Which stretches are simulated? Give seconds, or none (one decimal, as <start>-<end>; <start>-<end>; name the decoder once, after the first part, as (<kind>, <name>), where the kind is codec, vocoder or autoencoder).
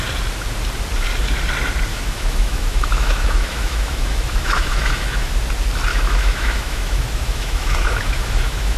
1.9-5.3 (autoencoder, DAC-VAE); 5.9-8.8